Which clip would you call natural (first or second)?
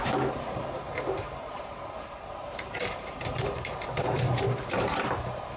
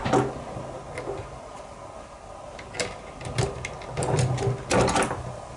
second